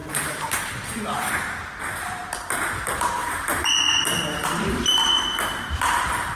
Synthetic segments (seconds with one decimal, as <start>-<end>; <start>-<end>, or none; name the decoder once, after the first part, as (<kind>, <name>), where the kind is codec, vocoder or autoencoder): 0.0-1.3 (vocoder, BigVGAN v2); 3.2-4.2